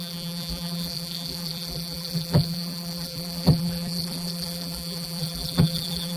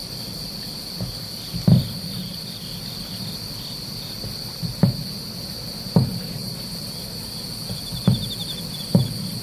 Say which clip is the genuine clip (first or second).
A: second